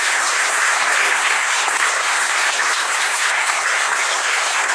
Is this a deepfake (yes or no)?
yes